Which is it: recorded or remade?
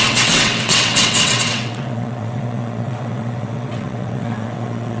remade